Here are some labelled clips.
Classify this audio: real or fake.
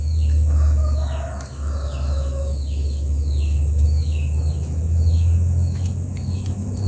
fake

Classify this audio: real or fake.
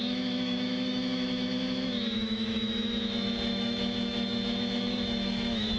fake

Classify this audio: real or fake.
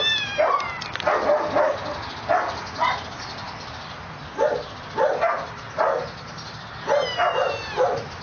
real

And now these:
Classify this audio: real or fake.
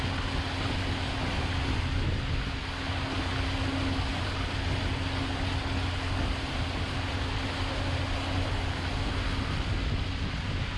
real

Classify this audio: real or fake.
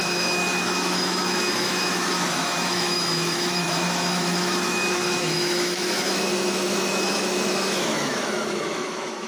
fake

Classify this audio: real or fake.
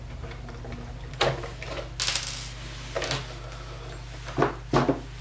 real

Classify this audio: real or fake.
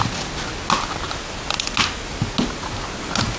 real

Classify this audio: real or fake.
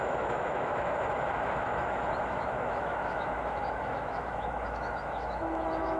fake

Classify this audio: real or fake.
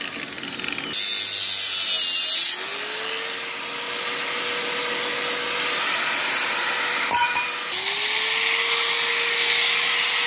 real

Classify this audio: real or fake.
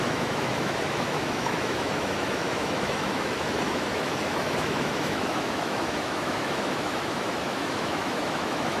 fake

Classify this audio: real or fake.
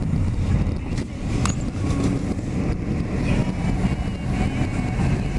real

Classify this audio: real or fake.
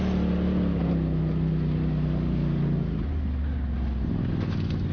real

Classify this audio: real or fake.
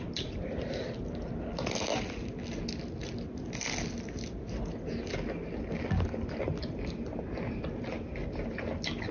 real